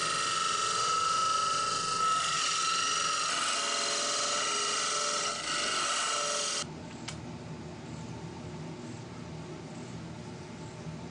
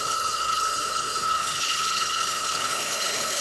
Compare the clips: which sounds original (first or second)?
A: first